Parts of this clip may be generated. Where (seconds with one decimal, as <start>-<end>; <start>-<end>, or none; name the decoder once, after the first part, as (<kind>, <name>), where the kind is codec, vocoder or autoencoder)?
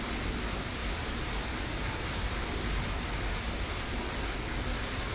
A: none